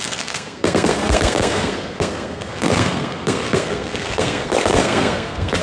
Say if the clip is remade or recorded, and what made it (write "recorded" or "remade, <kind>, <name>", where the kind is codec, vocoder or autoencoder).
remade, codec, SNAC